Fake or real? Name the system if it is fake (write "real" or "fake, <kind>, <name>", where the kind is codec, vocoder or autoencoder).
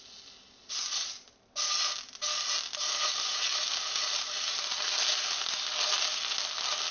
real